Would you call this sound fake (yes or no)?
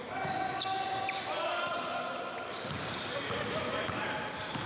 no